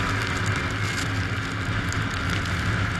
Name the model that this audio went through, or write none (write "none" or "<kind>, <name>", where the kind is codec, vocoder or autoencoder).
none